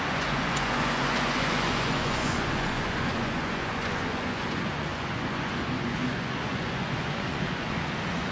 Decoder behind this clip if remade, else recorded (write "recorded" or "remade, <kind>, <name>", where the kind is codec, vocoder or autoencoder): remade, vocoder, Vocos